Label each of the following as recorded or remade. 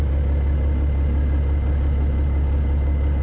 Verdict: recorded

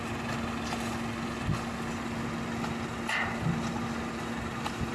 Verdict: recorded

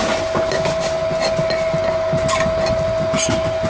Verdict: recorded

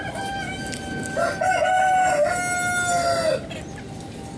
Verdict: recorded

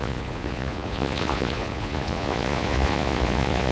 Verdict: remade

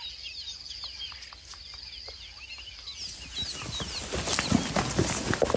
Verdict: recorded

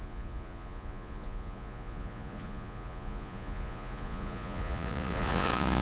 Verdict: remade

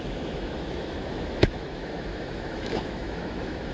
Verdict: remade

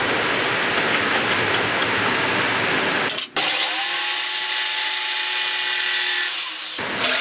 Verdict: recorded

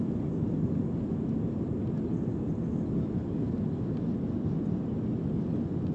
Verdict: recorded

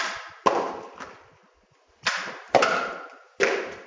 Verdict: recorded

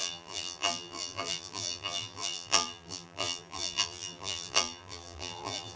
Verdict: remade